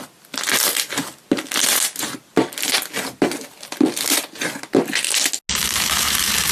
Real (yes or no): yes